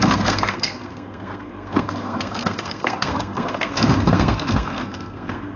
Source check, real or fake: fake